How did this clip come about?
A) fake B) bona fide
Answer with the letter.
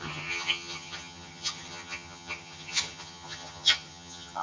A